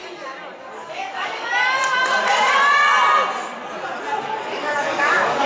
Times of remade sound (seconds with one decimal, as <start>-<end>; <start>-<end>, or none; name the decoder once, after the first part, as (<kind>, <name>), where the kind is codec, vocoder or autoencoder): 0.6-1.5 (codec, DAC); 4.2-5.5